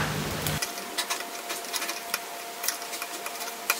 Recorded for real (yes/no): yes